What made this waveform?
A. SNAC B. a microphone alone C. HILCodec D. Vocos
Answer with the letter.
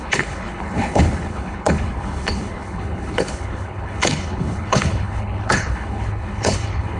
C